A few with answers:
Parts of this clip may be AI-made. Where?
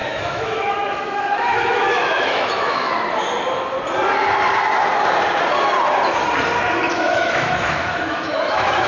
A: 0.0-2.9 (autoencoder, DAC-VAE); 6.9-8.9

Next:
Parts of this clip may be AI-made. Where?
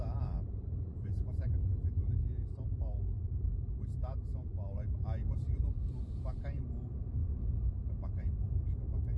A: 0.0-1.6 (vocoder, BigVGAN v2); 5.3-7.2; 7.7-9.2